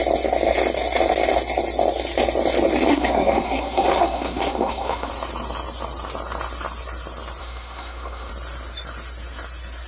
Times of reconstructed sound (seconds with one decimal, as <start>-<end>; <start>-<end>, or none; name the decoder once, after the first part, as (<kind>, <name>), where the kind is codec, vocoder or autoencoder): 2.9-5.1 (codec, SNAC); 7.4-8.3